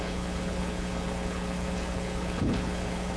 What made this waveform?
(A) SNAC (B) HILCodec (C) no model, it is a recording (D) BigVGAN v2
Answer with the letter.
B